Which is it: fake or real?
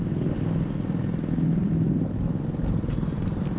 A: real